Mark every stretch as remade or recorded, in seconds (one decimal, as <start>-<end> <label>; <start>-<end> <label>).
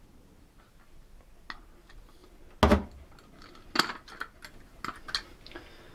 0.0-5.9 recorded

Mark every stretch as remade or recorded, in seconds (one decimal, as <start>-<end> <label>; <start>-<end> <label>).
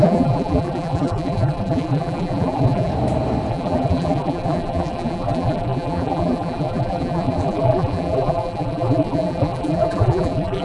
0.0-2.9 remade; 2.9-3.5 recorded; 3.5-10.6 remade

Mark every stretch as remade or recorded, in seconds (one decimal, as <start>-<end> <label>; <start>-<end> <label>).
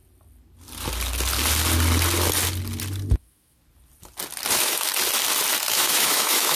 0.0-3.2 recorded; 3.2-3.6 remade; 3.6-4.5 recorded; 4.5-4.9 remade; 4.9-5.7 recorded; 5.7-6.5 remade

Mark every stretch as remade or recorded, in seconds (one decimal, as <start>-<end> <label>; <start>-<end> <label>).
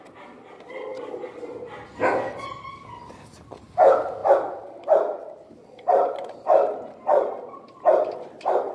0.0-8.7 recorded